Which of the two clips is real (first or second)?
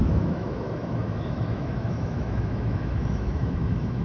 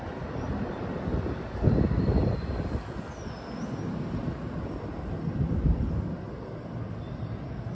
second